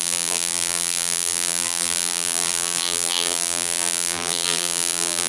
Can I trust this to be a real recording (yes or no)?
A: no